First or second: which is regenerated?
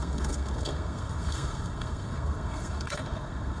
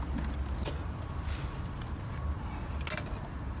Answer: first